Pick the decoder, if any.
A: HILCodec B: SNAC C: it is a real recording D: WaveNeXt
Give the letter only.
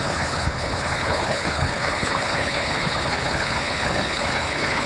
A